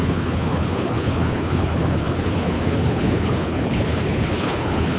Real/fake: fake